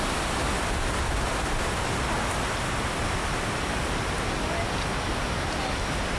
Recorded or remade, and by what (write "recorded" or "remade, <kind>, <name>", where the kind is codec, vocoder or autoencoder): recorded